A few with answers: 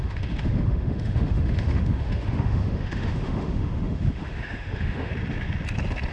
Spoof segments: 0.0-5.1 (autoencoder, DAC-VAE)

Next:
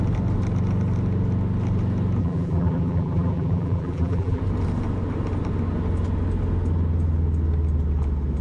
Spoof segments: 2.2-4.4 (vocoder, BigVGAN v2)

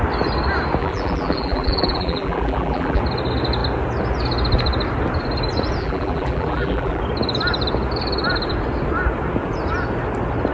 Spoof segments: 0.8-3.0 (vocoder, BigVGAN v2); 5.8-7.0

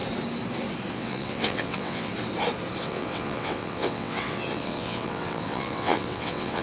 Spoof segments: 0.9-2.1 (vocoder, WaveNeXt); 2.8-6.6

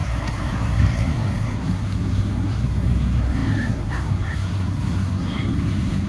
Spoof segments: 0.0-6.1 (codec, SNAC)

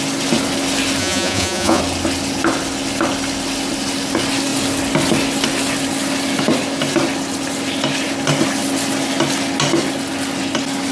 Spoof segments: 1.0-1.8 (vocoder, Vocos)